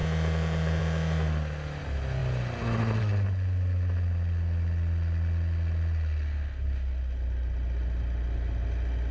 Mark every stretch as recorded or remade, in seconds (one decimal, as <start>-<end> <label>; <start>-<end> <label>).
0.0-9.1 recorded